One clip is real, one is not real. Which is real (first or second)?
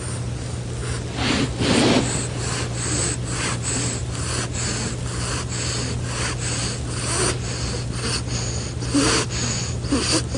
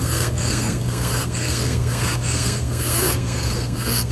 first